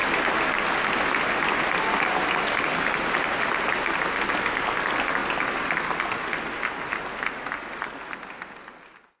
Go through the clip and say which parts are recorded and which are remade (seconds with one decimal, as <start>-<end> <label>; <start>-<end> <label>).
0.0-9.2 recorded